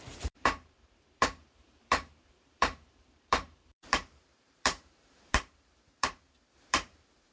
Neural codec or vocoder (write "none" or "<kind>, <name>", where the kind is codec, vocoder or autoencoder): vocoder, BigVGAN v2